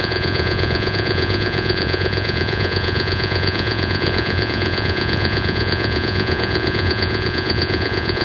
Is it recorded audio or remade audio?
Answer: remade